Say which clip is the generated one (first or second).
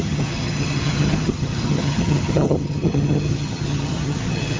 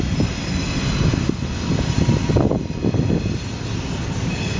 first